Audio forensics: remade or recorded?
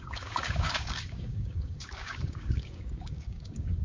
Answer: remade